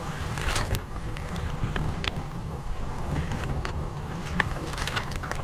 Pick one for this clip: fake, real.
fake